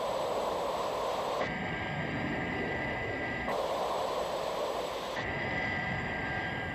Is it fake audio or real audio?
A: fake